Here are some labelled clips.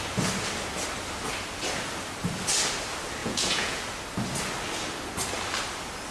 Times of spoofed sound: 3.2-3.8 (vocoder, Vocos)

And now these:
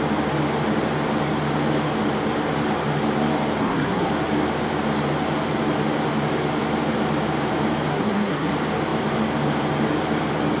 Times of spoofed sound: 3.6-4.1 (codec, SNAC); 7.9-8.5